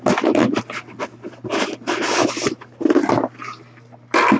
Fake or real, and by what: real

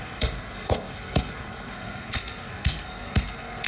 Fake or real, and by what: fake, codec, SNAC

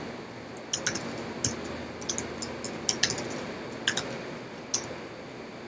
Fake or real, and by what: real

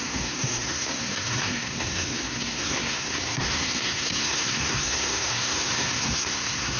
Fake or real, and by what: fake, codec, SNAC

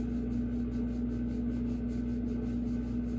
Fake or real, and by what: real